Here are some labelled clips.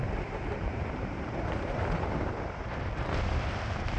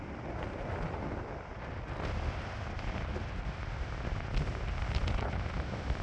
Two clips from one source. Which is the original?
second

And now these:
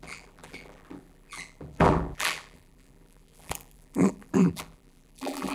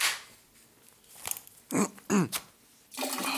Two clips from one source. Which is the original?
second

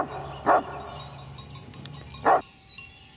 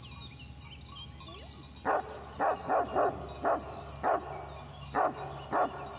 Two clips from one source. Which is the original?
second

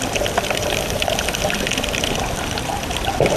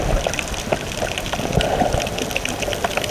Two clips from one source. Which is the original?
second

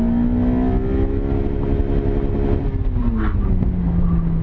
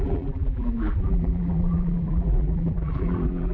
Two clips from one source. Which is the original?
first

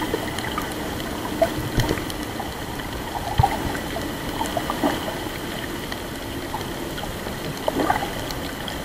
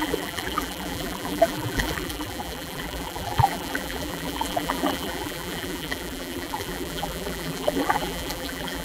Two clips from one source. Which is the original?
first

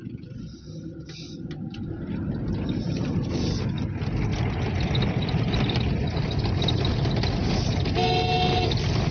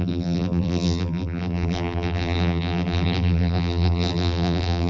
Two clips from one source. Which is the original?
first